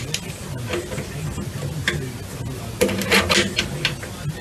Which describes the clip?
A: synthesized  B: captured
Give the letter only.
B